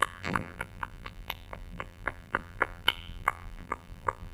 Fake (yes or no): yes